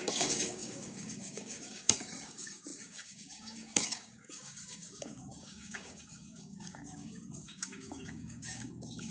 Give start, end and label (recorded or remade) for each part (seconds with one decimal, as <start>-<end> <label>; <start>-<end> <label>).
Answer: 0.0-9.1 remade